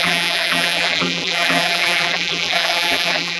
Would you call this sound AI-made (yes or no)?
yes